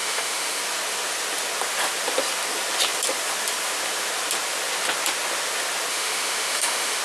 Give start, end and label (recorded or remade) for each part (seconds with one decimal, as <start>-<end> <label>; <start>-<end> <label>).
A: 0.0-0.6 remade; 0.6-5.9 recorded; 5.9-7.0 remade